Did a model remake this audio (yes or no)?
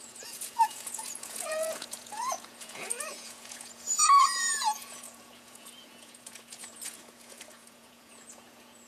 yes